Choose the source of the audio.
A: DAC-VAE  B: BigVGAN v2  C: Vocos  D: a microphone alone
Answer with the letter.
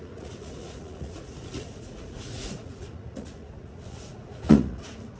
C